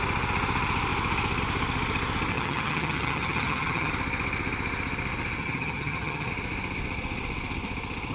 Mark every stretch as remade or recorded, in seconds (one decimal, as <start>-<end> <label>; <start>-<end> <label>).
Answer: 0.0-2.3 recorded; 2.3-3.9 remade; 3.9-5.4 recorded; 5.4-6.3 remade; 6.3-8.1 recorded